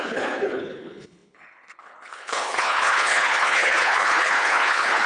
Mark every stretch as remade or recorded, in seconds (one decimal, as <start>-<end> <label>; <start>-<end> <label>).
0.0-5.1 remade

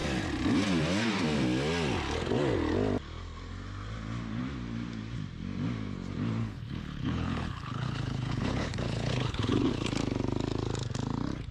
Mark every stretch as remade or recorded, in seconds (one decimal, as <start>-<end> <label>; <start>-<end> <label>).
0.0-6.4 recorded; 6.4-9.9 remade; 9.9-11.5 recorded

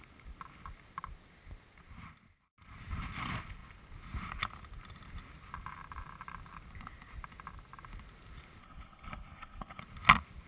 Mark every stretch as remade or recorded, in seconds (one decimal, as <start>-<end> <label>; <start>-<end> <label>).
0.0-8.6 recorded; 8.6-9.8 remade; 9.8-10.5 recorded